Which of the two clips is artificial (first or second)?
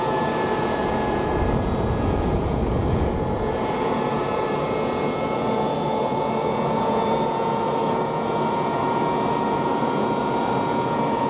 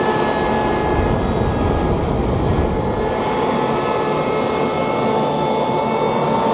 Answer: first